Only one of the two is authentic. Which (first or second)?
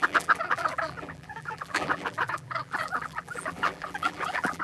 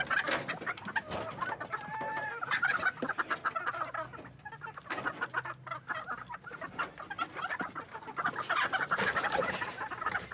second